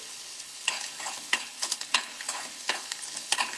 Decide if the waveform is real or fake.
fake